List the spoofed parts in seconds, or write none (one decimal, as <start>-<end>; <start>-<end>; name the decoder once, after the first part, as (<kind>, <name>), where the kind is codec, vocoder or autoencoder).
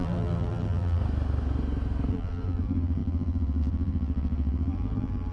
0.0-1.0 (vocoder, BigVGAN v2); 2.1-5.3